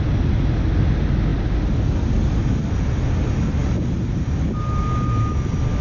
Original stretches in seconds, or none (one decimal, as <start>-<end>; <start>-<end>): 0.0-5.8